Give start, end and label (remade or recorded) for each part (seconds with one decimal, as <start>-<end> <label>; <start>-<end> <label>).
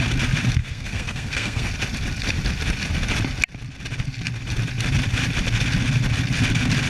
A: 0.0-0.6 recorded; 0.6-1.7 remade; 1.7-6.9 recorded